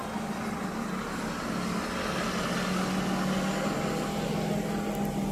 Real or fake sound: real